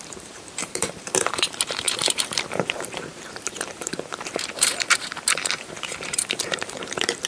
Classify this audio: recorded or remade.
remade